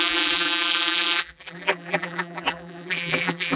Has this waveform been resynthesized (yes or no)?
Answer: yes